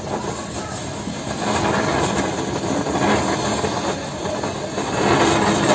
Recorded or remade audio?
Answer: recorded